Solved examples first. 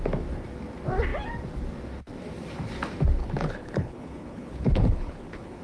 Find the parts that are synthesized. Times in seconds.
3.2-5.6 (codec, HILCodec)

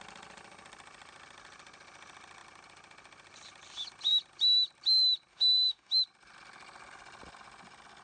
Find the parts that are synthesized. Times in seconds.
5.3-5.9 (autoencoder, DAC-VAE)

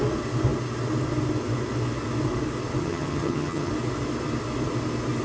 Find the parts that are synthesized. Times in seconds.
2.8-3.7 (vocoder, HiFi-GAN)